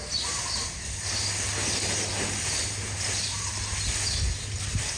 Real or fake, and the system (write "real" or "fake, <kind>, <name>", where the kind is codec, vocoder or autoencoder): real